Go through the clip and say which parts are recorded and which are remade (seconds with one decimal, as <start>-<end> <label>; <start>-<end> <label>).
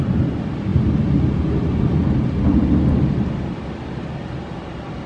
0.0-5.1 recorded